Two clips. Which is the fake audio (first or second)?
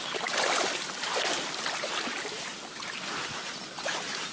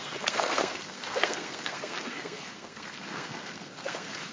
second